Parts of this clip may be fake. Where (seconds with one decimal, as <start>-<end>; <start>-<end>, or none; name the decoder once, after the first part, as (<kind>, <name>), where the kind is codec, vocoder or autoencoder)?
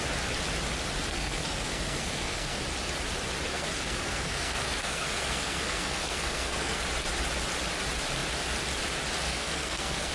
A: 1.1-2.6 (codec, SNAC); 3.5-6.8; 9.3-10.1